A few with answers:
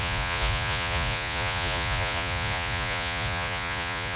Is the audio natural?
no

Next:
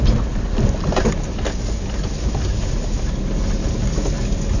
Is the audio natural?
yes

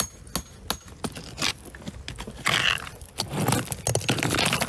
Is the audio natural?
yes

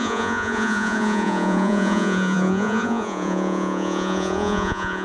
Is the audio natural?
no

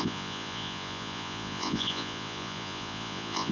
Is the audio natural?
no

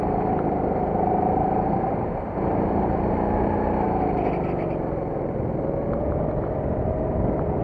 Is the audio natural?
yes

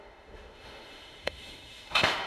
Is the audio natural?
no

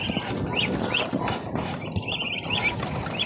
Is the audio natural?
yes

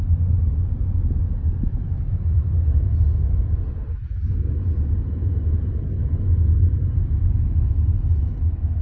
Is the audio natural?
yes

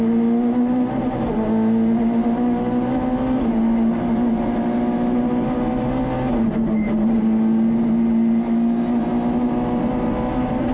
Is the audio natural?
yes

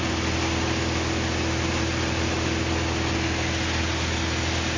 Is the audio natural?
yes